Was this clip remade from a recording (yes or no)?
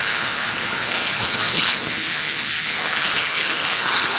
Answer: yes